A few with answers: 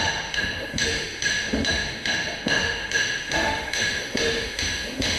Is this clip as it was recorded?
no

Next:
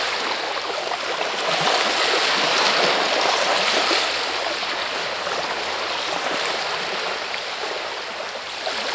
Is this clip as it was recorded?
yes